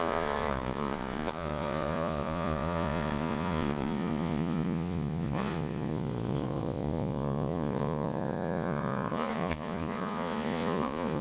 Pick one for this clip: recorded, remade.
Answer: remade